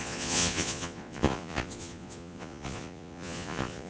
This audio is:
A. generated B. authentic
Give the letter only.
A